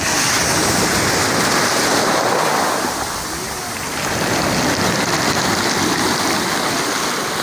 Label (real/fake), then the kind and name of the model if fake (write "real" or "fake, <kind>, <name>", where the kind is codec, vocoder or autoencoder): real